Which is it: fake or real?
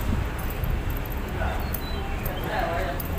real